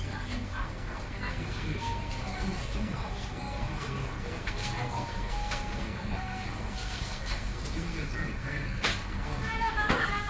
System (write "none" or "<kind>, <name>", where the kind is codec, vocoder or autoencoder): codec, SNAC